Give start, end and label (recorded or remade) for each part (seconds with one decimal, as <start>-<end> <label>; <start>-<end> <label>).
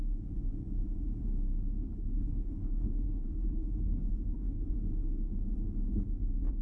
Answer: 0.0-1.8 recorded; 1.8-4.7 remade; 4.7-6.6 recorded